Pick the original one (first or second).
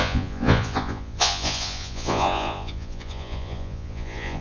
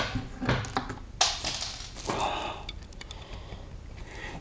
second